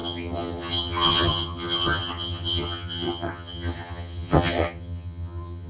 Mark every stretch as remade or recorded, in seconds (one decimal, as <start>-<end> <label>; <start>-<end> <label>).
0.0-5.7 remade